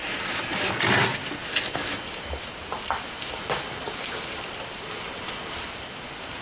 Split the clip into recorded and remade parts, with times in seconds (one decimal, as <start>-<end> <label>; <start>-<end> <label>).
0.0-6.4 recorded